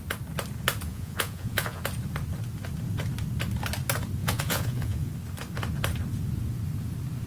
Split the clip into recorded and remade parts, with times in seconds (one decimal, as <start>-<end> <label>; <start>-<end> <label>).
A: 0.0-0.9 recorded; 0.9-1.8 remade; 1.8-4.2 recorded; 4.2-5.1 remade; 5.1-7.3 recorded